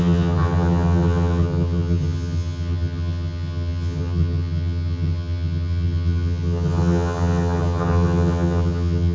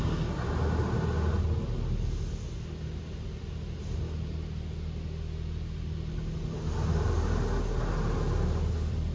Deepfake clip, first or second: first